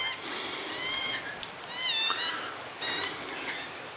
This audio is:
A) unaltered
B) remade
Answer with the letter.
A